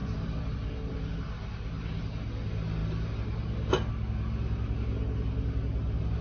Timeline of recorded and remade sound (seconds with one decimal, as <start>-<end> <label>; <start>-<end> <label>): 0.0-6.2 recorded